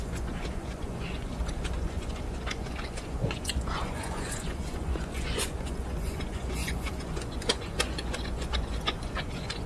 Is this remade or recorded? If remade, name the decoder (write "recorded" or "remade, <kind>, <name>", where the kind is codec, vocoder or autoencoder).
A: remade, vocoder, Vocos